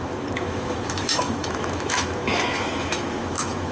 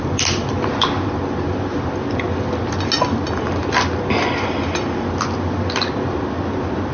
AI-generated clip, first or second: first